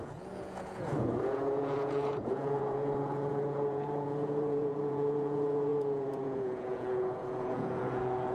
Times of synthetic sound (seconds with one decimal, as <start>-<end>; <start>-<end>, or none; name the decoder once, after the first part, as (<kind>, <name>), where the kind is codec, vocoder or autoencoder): 0.0-8.3 (vocoder, Vocos)